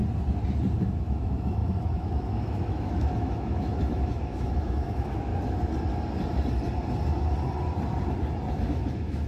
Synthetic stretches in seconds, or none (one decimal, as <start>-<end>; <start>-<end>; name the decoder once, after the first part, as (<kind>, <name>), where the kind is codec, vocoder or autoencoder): 0.8-5.3 (autoencoder, DAC-VAE); 8.5-9.3